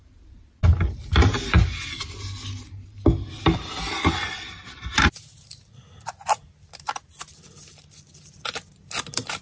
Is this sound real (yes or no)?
yes